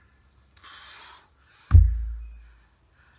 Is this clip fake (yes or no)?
no